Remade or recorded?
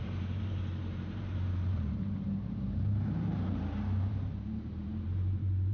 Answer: remade